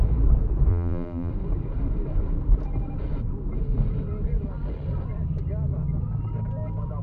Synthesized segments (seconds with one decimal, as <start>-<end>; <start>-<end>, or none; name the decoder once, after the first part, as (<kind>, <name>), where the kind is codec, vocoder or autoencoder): 0.7-1.3 (vocoder, BigVGAN v2)